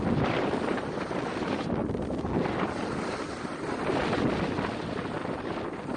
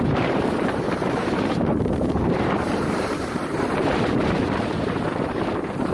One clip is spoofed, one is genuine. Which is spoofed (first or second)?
second